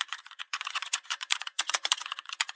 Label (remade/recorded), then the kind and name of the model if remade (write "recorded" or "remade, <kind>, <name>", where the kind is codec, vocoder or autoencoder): remade, vocoder, Vocos